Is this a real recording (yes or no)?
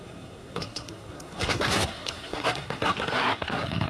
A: no